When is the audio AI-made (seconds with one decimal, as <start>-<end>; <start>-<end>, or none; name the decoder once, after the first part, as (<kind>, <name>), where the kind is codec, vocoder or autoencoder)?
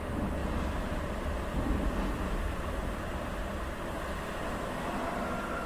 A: none